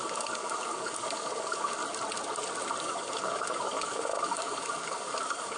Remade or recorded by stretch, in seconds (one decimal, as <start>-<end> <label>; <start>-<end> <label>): 0.0-1.8 remade; 1.8-2.8 recorded; 2.8-5.6 remade